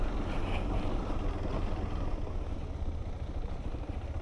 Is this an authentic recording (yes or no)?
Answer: yes